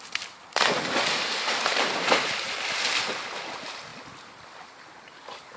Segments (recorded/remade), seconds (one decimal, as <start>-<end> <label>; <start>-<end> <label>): 0.0-5.6 recorded